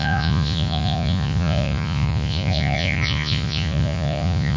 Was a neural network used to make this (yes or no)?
yes